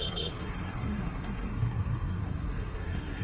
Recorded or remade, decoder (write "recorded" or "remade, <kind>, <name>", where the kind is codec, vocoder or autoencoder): remade, codec, SNAC